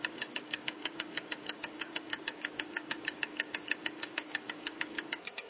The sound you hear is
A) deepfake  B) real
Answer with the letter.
A